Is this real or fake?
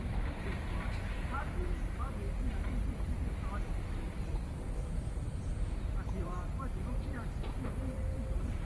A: fake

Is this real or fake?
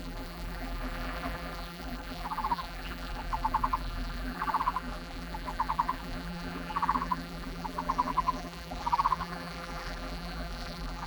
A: fake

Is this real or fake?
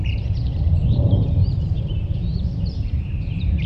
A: fake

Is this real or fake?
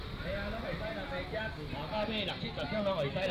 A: real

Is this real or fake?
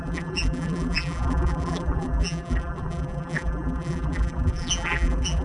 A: fake